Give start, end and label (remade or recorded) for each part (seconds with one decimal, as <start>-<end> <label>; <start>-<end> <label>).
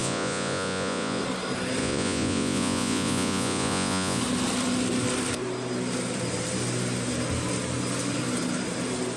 0.0-1.2 remade; 1.2-1.8 recorded; 1.8-4.2 remade; 4.2-9.2 recorded